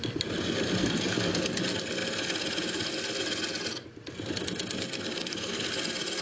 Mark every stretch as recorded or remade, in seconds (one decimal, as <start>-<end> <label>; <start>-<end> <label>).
0.0-0.8 recorded; 0.8-1.6 remade; 1.6-5.2 recorded; 5.2-5.7 remade; 5.7-6.2 recorded